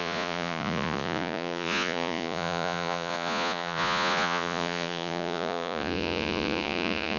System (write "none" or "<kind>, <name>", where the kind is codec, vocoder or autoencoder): vocoder, Vocos